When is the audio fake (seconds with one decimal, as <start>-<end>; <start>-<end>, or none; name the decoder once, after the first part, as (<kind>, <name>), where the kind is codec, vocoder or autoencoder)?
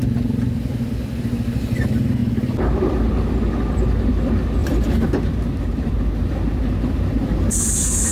4.6-6.0 (vocoder, BigVGAN v2)